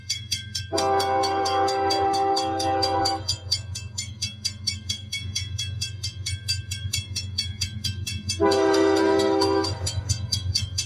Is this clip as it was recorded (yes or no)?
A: no